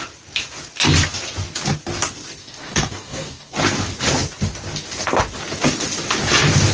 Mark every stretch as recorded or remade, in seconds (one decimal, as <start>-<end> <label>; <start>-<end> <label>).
0.0-2.4 recorded; 2.4-3.5 remade; 3.5-6.7 recorded